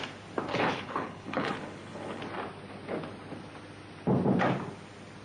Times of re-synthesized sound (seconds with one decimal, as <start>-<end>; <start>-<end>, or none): 0.5-2.2